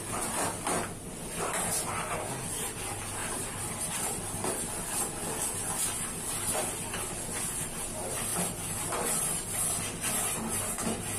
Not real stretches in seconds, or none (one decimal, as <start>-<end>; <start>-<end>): 3.2-5.1